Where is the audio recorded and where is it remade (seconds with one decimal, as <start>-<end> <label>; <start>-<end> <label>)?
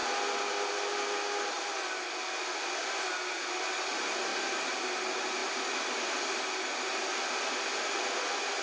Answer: 0.0-4.3 recorded; 4.3-5.0 remade; 5.0-8.6 recorded